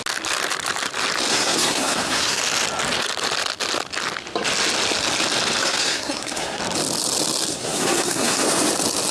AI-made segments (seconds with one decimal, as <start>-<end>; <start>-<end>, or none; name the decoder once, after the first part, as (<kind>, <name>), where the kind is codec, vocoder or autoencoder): 1.3-2.4 (codec, SNAC); 5.6-6.6; 7.5-8.4